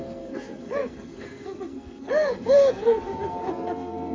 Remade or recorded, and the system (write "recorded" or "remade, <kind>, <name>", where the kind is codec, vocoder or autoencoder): remade, codec, SNAC